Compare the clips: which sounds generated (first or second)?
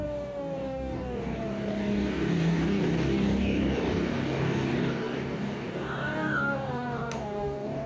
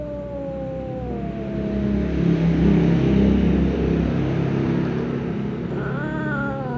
first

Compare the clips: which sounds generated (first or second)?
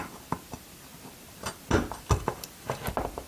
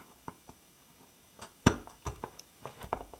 second